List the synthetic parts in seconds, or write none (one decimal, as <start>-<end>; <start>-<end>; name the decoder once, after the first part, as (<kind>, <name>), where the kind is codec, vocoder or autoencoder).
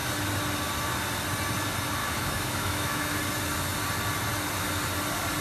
2.0-3.2 (autoencoder, DAC-VAE)